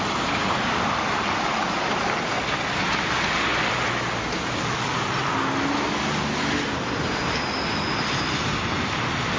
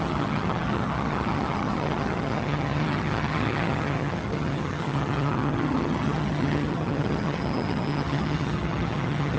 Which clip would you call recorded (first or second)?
first